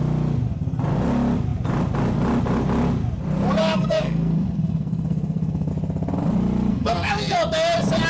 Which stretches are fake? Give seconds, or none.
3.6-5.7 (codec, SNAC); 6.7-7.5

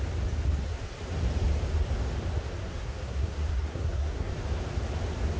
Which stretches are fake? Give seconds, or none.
2.6-4.3 (codec, SNAC)

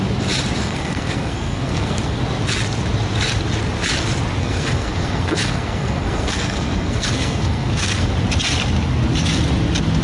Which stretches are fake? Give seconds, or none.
0.6-2.2 (codec, SNAC); 4.4-8.1

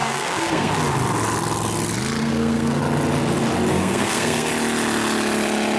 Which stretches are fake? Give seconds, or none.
0.0-0.7 (codec, SNAC); 2.2-2.8; 3.7-4.5